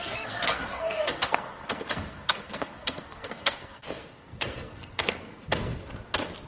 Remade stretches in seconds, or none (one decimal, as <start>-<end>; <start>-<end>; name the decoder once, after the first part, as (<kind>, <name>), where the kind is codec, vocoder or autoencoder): 0.0-5.8 (codec, SNAC)